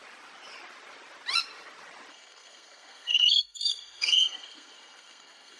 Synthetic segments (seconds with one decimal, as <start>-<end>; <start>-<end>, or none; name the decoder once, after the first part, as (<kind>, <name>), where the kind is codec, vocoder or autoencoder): 2.1-5.6 (codec, SNAC)